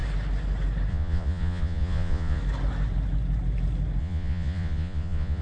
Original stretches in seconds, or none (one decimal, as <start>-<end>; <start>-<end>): 0.0-0.9; 2.4-4.0